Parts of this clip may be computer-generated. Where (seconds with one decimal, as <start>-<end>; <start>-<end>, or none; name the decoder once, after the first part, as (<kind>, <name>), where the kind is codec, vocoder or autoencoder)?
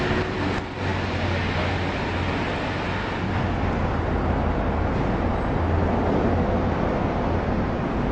none